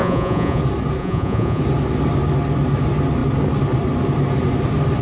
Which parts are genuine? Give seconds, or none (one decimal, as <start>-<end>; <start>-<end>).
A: 0.6-1.0; 1.6-5.0